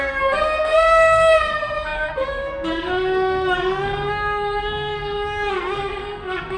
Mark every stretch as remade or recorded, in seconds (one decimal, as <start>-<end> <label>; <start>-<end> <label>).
0.0-6.6 remade